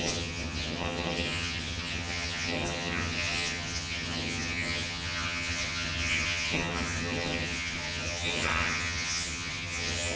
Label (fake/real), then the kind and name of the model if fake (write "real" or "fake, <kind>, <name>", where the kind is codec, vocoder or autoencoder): fake, vocoder, HiFi-GAN